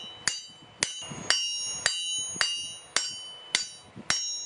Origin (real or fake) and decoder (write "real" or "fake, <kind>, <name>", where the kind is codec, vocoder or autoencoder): real